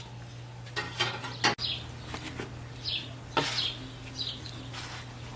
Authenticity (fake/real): real